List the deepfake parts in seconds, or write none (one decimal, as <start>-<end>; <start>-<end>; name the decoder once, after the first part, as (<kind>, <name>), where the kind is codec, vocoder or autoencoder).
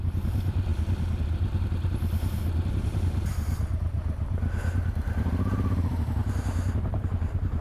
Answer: 0.0-0.7 (vocoder, BigVGAN v2); 2.7-6.2; 6.8-7.6